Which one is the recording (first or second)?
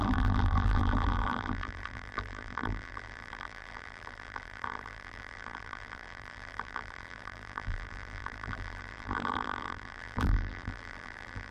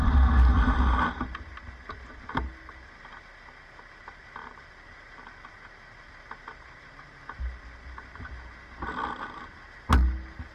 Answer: second